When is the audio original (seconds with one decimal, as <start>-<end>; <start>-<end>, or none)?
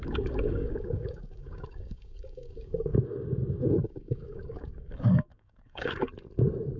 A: 6.1-6.8